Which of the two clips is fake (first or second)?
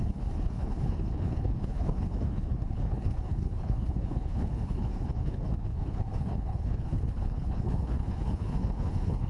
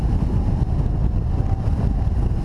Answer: first